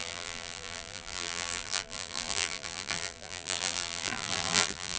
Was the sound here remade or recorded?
remade